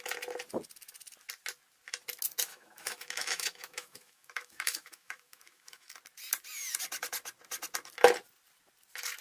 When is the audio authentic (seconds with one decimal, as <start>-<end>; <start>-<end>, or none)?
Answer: 0.0-2.5; 5.9-9.2